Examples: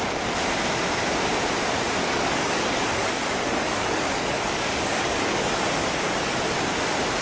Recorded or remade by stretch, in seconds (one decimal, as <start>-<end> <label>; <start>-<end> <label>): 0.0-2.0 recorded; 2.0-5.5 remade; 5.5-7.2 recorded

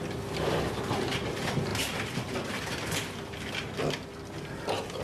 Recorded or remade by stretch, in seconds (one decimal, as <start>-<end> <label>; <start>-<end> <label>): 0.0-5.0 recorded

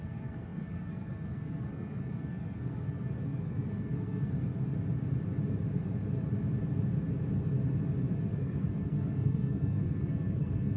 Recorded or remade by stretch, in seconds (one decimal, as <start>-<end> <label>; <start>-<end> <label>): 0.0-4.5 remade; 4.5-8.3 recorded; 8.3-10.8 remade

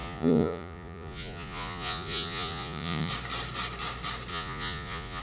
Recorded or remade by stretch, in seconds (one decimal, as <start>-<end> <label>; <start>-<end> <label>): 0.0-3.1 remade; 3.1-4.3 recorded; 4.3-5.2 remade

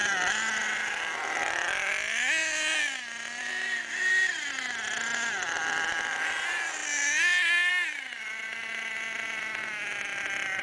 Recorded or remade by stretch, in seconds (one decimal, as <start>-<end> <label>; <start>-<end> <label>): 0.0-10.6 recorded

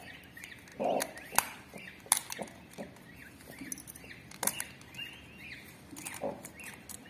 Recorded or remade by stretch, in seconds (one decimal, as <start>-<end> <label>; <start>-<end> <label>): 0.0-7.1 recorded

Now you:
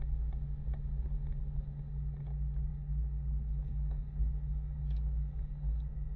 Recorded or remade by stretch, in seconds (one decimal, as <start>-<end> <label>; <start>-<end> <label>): 0.0-2.7 recorded; 2.7-6.2 remade

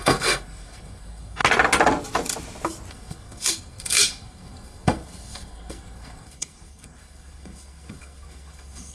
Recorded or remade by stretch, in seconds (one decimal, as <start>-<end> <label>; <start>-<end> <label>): 0.0-1.4 remade; 1.4-2.9 recorded; 2.9-8.9 remade